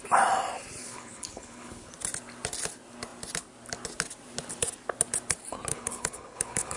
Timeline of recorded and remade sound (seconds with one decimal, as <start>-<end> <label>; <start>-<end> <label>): 0.0-0.8 recorded; 0.8-1.9 remade; 1.9-5.7 recorded; 5.7-6.8 remade